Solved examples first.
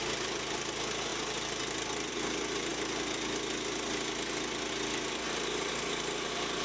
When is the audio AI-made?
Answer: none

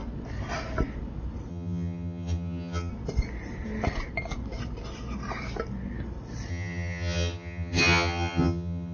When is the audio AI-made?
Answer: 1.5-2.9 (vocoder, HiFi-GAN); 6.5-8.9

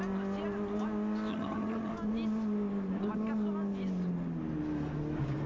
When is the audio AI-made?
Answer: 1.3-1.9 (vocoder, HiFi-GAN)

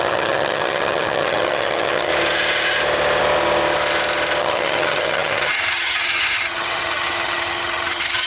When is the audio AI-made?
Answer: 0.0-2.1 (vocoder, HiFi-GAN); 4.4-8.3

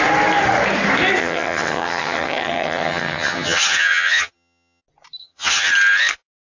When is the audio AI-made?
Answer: 1.2-4.8 (vocoder, HiFi-GAN); 5.2-5.7

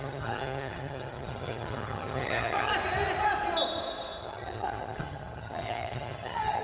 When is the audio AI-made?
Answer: 0.0-2.7 (vocoder, HiFi-GAN); 4.2-6.6